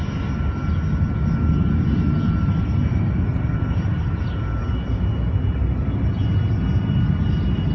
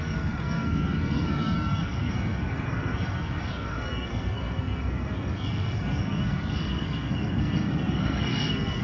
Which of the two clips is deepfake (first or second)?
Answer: second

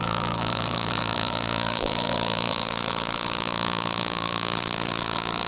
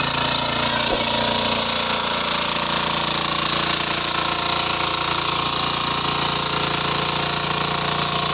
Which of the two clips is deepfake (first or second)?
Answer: first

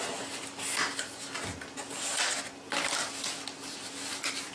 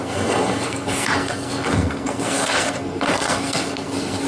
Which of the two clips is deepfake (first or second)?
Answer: second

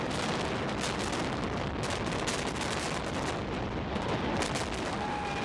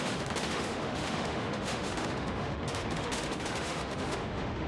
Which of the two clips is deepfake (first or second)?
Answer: second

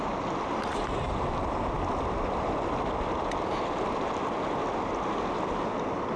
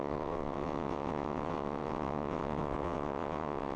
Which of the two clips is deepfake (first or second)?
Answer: second